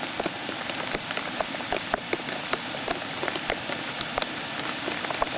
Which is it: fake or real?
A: fake